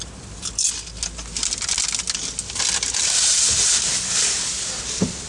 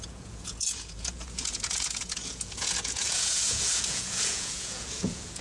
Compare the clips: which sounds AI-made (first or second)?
second